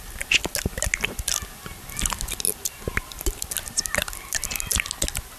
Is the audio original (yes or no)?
yes